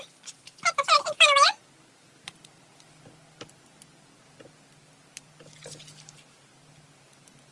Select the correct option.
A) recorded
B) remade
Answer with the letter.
A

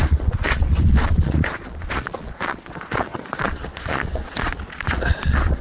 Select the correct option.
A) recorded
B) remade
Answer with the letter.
B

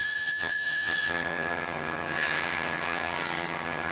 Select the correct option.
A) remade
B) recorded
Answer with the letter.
A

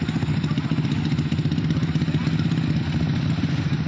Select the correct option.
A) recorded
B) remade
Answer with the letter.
A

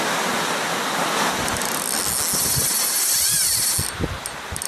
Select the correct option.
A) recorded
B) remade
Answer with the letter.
A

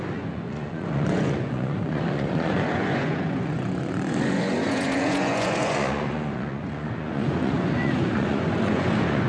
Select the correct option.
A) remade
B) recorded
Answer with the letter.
A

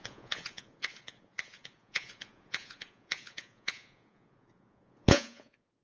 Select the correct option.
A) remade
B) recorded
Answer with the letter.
A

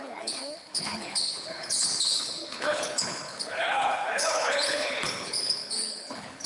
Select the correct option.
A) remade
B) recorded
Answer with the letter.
A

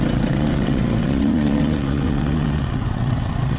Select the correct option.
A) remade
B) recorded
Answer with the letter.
A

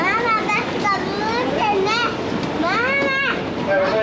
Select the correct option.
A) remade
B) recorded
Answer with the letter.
B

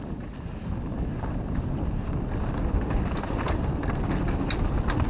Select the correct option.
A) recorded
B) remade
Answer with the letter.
A